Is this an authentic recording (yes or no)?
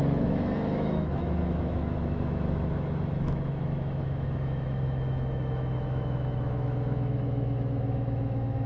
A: no